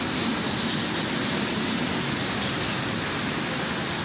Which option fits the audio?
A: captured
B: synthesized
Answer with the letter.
A